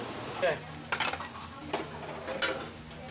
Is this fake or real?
real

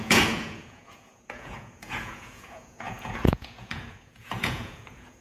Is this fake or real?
fake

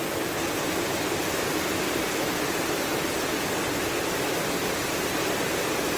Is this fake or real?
real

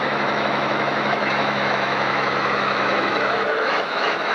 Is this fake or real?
fake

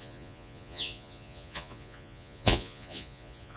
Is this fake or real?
fake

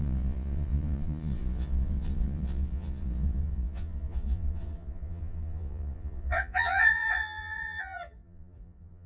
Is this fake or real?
fake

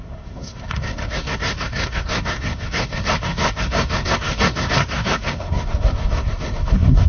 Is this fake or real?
fake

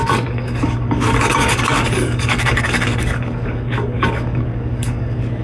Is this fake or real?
fake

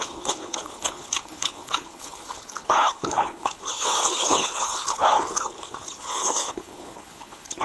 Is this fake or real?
fake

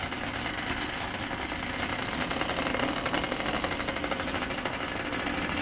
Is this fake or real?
real